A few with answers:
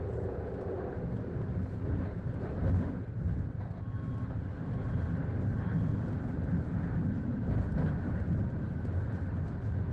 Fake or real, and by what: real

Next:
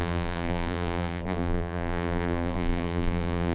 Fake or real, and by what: fake, vocoder, BigVGAN v2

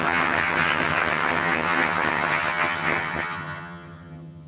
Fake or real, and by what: fake, vocoder, HiFi-GAN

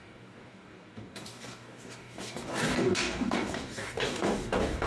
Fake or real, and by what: fake, codec, DAC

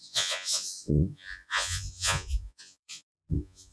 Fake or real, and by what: fake, vocoder, Vocos